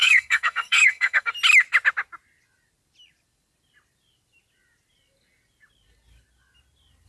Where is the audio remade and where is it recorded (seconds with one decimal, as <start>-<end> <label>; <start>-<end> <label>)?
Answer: 0.0-1.3 remade; 1.3-7.1 recorded